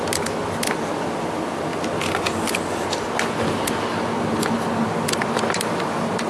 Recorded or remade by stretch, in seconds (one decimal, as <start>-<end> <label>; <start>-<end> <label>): 0.0-6.3 recorded